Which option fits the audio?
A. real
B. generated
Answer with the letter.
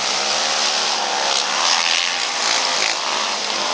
A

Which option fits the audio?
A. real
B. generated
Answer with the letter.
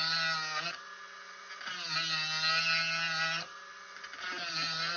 A